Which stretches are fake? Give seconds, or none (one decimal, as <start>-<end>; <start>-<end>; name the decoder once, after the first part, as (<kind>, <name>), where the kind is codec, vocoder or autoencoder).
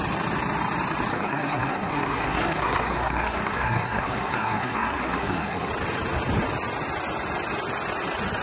1.1-5.7 (codec, SNAC)